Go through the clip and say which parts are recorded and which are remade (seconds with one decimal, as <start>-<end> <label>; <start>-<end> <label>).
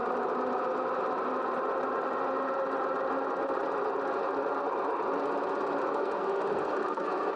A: 0.0-5.8 recorded; 5.8-7.4 remade